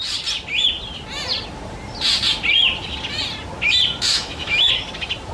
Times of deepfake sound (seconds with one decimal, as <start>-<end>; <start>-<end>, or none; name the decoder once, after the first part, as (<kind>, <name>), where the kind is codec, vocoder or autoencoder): 4.1-4.7 (autoencoder, DAC-VAE)